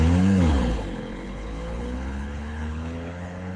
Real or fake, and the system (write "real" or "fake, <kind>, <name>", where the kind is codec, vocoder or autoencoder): fake, codec, HILCodec